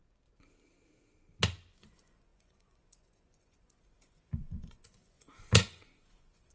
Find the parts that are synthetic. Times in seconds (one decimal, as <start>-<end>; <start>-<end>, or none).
1.7-6.5